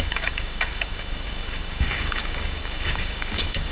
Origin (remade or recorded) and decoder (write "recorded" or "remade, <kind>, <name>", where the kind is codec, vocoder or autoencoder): remade, codec, DAC